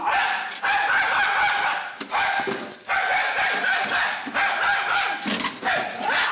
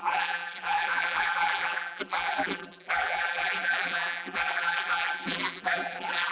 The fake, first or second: second